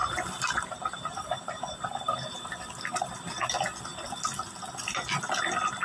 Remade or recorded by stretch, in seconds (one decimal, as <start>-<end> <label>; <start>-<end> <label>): 0.0-3.5 remade; 3.5-5.8 recorded